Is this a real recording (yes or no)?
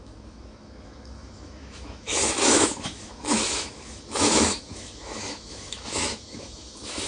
no